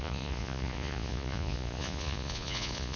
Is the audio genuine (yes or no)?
no